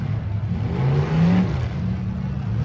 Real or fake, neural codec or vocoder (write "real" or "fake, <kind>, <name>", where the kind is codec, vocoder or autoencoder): real